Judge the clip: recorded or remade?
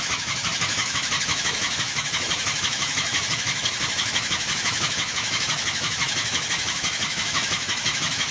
remade